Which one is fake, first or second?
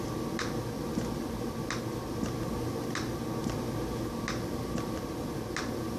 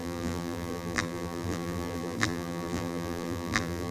second